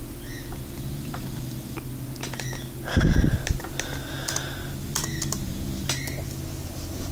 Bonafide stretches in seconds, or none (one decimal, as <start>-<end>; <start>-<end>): 0.0-7.1